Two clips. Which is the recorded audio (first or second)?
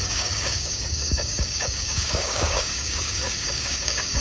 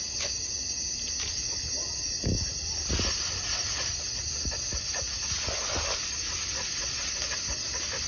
second